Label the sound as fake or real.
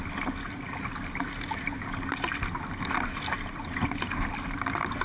real